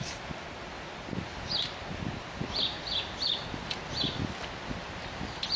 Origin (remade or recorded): recorded